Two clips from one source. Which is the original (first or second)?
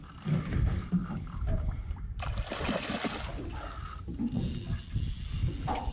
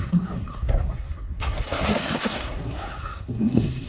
first